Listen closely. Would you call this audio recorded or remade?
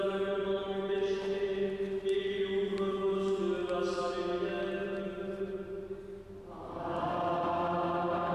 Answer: recorded